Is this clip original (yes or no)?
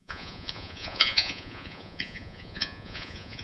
no